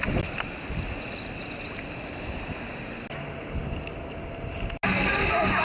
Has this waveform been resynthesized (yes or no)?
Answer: no